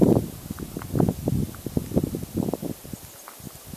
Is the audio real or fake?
real